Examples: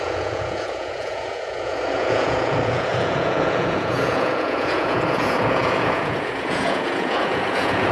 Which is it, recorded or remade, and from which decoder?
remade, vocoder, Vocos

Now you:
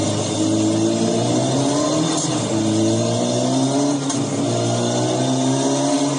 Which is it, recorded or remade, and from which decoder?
recorded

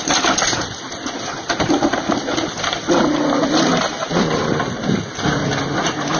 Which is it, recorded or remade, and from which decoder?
recorded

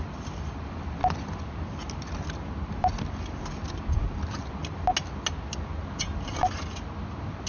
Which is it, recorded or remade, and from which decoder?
recorded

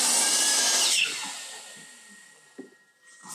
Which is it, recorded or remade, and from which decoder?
recorded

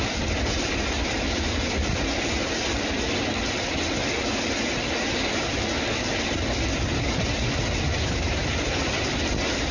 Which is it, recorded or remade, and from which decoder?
recorded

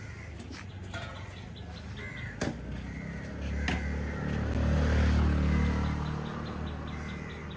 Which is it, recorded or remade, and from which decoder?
recorded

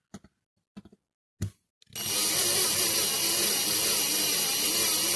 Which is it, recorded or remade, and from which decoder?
recorded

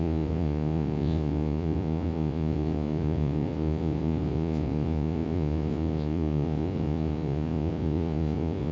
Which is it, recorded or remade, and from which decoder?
remade, vocoder, Vocos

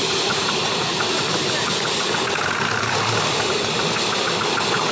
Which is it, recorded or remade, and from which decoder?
recorded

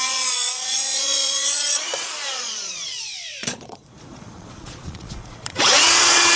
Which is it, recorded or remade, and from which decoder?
remade, vocoder, Vocos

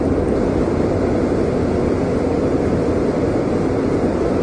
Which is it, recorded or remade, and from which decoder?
recorded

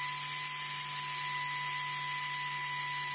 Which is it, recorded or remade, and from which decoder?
recorded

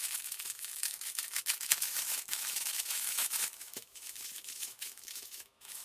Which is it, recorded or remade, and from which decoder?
remade, autoencoder, DAC-VAE